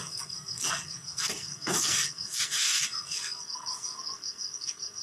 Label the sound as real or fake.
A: fake